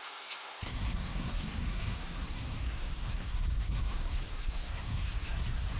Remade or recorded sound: remade